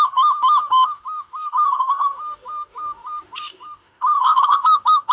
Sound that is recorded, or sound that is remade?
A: remade